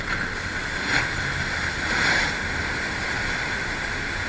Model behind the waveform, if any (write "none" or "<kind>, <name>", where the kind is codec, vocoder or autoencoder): none